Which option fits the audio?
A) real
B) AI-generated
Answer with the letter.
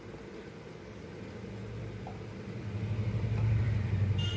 B